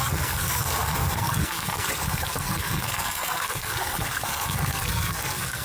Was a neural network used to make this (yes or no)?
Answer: yes